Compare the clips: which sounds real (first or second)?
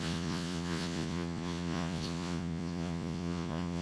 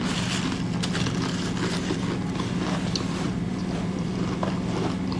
second